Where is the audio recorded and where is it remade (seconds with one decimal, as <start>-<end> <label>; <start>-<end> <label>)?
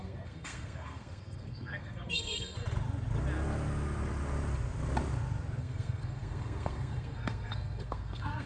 0.0-2.6 remade; 2.6-5.6 recorded; 5.6-8.5 remade